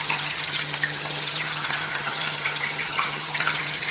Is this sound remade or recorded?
remade